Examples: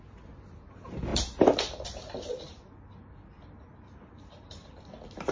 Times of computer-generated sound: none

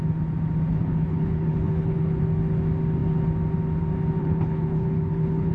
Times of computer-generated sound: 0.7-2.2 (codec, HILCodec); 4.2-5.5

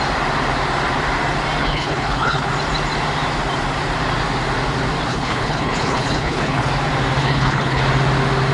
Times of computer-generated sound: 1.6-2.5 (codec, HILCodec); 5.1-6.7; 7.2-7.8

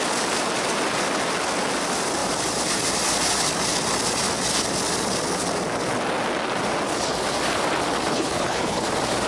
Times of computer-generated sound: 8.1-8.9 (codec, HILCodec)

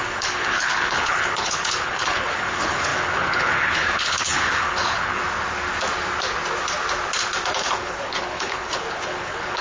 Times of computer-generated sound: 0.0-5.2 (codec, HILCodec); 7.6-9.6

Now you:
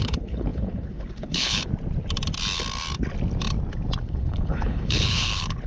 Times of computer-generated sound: 0.0-1.7 (codec, HILCodec); 4.0-5.7